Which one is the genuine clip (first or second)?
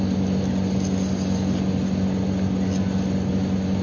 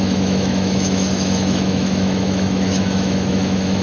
first